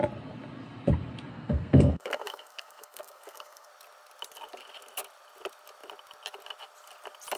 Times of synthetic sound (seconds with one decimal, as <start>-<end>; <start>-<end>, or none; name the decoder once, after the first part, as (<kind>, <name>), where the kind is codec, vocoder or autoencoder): 1.3-3.7 (codec, SNAC)